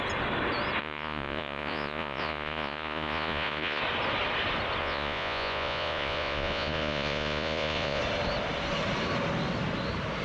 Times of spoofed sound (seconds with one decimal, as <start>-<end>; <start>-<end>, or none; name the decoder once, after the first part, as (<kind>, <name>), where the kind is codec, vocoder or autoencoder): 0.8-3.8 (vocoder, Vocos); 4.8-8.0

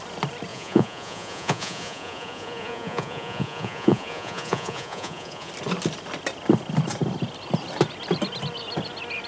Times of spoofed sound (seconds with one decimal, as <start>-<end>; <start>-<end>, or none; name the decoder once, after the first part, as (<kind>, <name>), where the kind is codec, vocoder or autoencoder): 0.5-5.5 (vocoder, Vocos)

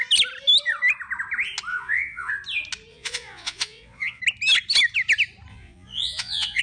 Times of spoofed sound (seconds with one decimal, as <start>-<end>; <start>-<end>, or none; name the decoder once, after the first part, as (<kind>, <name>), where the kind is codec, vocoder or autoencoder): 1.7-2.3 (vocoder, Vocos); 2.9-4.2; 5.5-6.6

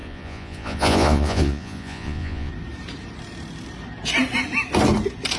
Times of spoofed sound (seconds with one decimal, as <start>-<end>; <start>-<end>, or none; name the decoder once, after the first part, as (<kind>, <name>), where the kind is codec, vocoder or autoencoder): 0.0-2.5 (vocoder, Vocos)

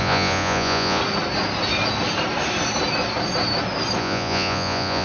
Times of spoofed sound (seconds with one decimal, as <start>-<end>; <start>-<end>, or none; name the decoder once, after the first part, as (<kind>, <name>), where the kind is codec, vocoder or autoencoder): 0.0-1.0 (vocoder, Vocos); 4.0-5.0

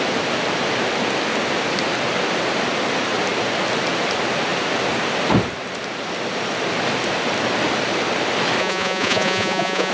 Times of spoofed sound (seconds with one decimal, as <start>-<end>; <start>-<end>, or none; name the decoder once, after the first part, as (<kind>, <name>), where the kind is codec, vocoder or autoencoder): 8.6-9.9 (vocoder, Vocos)